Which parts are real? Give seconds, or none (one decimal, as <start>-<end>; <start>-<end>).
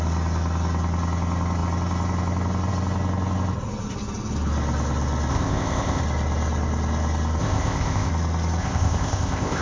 0.0-5.3; 6.0-7.4; 8.1-8.6